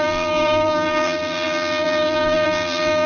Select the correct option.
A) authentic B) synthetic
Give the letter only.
B